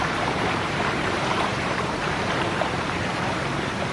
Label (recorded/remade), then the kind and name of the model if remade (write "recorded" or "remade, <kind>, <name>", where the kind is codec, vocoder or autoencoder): remade, vocoder, BigVGAN v2